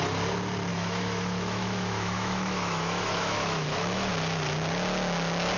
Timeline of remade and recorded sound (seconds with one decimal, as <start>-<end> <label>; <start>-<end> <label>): 0.0-0.7 recorded; 0.7-4.1 remade; 4.1-5.6 recorded